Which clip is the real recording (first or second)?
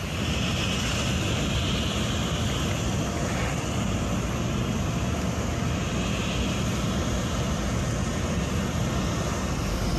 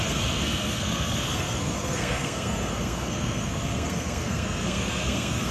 first